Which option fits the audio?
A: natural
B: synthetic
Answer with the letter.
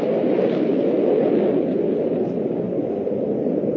A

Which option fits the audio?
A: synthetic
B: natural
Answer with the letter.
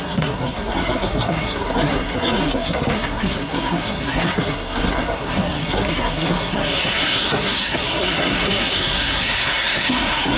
A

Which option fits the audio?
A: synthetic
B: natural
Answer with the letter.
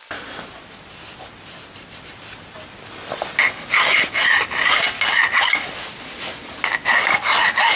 B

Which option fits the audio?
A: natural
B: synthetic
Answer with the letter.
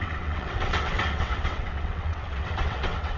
B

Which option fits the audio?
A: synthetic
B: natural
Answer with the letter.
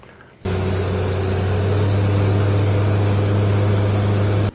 B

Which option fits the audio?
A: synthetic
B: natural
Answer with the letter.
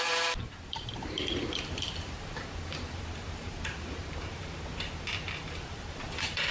A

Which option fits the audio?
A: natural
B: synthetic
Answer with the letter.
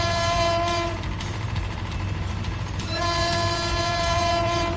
B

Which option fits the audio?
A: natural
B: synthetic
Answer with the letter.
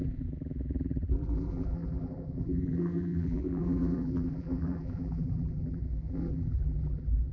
B